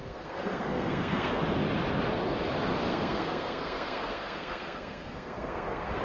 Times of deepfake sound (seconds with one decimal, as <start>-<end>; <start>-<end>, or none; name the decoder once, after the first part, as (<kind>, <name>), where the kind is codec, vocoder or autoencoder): 0.0-1.4 (codec, SNAC); 2.9-6.0